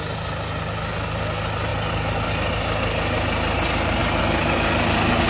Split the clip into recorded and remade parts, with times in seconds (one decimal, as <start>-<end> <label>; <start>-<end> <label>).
0.0-5.3 recorded